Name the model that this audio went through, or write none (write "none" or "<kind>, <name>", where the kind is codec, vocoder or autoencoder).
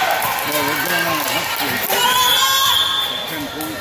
none